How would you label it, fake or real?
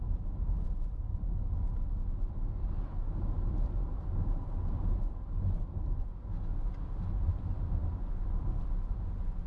real